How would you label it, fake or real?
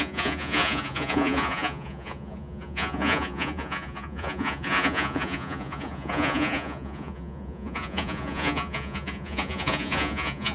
fake